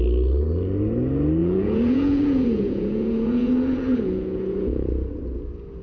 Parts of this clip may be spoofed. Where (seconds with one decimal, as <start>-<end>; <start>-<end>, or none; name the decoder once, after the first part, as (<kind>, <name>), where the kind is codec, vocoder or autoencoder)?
1.4-4.9 (vocoder, Vocos)